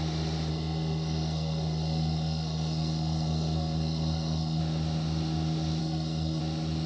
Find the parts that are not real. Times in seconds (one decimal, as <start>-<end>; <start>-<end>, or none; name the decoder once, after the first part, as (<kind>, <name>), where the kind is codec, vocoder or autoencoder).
0.5-4.6 (codec, SNAC); 5.8-6.4